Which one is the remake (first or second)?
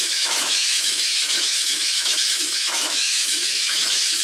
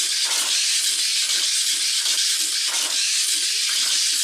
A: first